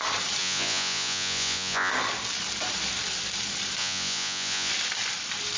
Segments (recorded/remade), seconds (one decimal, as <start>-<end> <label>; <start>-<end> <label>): 0.0-0.4 recorded; 0.4-1.9 remade; 1.9-3.8 recorded; 3.8-4.7 remade; 4.7-5.6 recorded